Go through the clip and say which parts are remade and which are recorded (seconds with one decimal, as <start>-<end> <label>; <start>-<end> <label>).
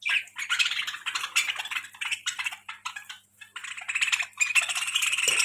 0.0-5.4 recorded